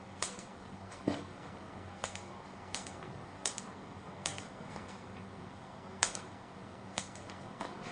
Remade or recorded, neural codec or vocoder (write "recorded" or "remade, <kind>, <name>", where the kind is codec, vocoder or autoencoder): remade, codec, SNAC